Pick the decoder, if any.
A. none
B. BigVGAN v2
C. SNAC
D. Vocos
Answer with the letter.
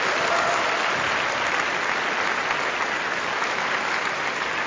A